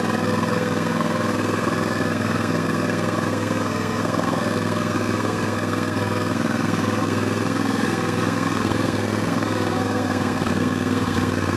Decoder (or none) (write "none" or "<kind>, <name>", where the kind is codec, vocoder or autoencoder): codec, SNAC